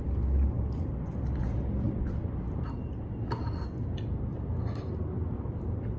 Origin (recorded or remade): recorded